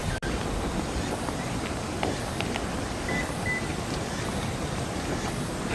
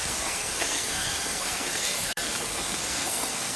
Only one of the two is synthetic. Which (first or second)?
second